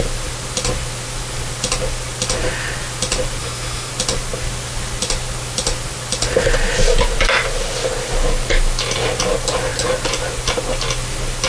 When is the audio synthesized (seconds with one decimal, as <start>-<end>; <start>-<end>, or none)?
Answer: 3.4-3.9